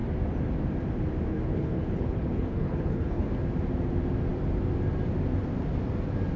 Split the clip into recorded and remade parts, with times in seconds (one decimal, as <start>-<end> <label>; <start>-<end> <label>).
0.0-1.3 recorded; 1.3-3.3 remade; 3.3-6.4 recorded